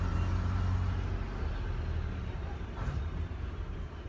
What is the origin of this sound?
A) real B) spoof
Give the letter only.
A